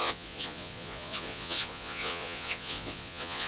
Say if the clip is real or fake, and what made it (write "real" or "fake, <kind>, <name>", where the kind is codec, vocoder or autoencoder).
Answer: fake, vocoder, Vocos